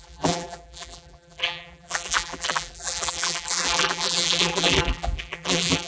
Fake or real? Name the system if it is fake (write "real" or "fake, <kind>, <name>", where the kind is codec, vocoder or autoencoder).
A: fake, vocoder, BigVGAN v2